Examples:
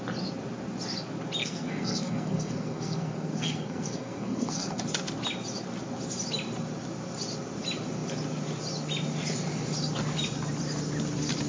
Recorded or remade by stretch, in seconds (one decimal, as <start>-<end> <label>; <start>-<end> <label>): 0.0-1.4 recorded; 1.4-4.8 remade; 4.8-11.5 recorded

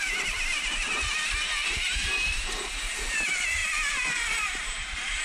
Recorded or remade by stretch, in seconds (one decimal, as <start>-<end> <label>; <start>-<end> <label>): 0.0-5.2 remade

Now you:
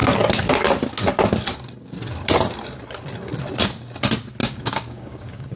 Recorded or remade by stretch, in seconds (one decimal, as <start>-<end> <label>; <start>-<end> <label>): 0.0-4.4 recorded; 4.4-5.6 remade

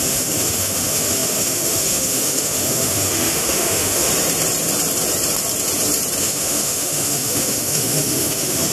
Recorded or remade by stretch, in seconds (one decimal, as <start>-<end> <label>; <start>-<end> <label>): 0.0-4.1 remade; 4.1-6.2 recorded; 6.2-8.7 remade